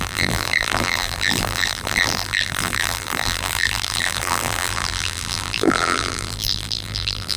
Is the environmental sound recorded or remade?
remade